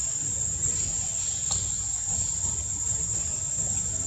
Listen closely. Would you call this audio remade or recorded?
recorded